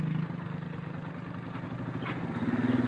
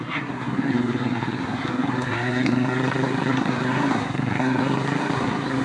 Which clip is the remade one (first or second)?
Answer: second